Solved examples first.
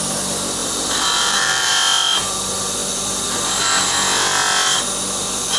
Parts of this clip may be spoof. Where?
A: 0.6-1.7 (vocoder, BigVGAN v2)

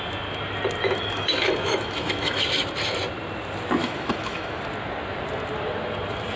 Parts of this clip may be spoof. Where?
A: 0.8-2.4 (autoencoder, DAC-VAE); 3.8-4.6

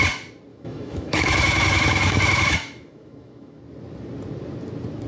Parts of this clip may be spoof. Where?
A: 0.5-3.6 (autoencoder, DAC-VAE)

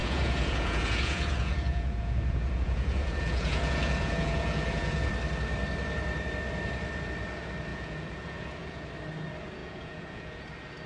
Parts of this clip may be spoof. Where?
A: 0.0-5.1 (vocoder, Vocos); 7.7-8.9; 9.6-10.4

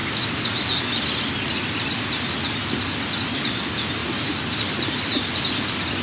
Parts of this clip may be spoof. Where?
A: 4.0-5.2 (vocoder, BigVGAN v2)

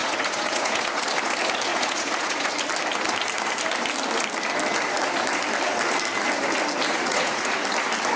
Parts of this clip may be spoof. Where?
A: 0.0-1.0 (vocoder, Vocos); 1.7-2.5; 6.9-7.5

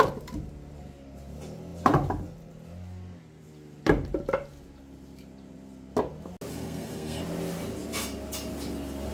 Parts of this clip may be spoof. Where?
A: 6.5-7.2 (codec, SNAC)

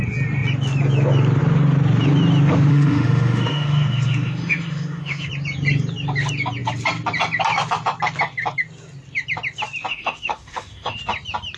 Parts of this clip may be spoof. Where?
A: 2.7-5.3 (autoencoder, DAC-VAE); 9.9-11.0